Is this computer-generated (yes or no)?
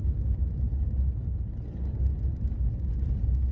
no